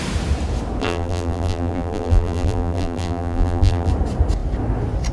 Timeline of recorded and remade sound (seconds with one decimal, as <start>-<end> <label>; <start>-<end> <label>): 0.0-0.8 recorded; 0.8-3.9 remade; 3.9-5.1 recorded